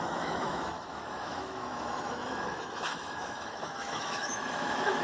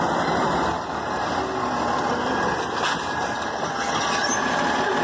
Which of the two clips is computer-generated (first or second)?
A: first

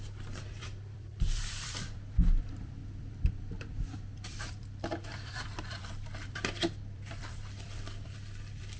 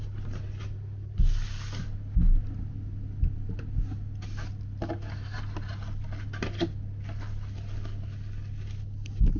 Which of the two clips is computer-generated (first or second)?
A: first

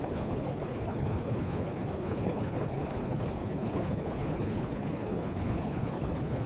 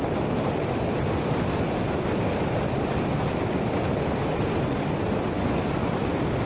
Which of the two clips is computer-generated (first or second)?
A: first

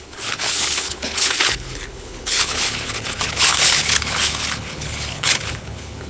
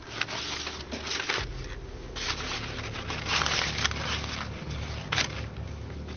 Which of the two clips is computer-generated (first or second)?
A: first